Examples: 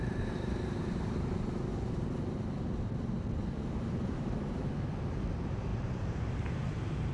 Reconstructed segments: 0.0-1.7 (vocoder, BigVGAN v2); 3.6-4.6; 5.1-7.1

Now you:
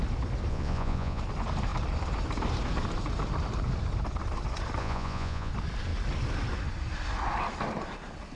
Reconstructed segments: 0.5-1.2 (vocoder, Vocos); 4.8-5.5

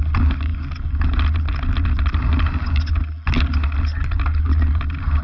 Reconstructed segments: none

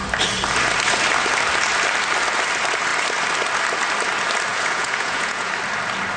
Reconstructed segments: 4.5-5.5 (vocoder, Vocos)